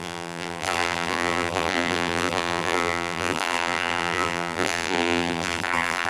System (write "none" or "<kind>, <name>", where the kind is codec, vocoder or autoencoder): vocoder, BigVGAN v2